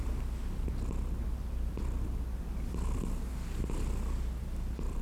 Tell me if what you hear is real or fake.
real